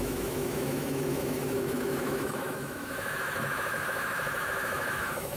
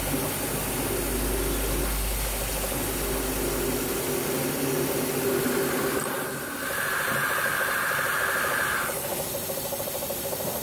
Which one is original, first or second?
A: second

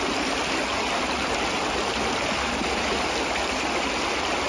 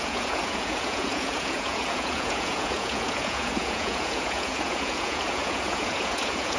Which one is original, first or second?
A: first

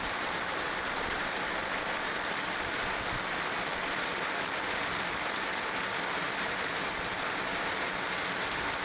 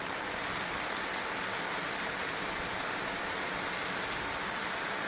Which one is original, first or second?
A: second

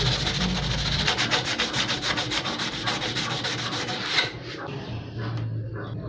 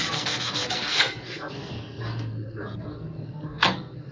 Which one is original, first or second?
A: first